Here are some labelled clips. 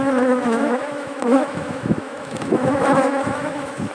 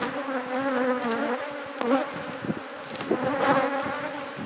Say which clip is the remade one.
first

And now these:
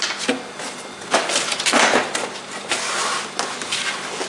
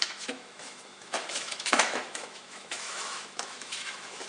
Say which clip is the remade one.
second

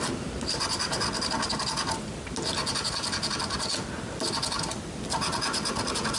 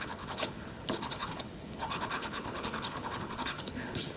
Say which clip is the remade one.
second